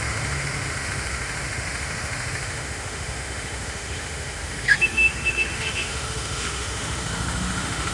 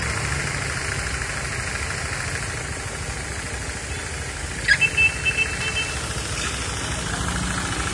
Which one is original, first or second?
second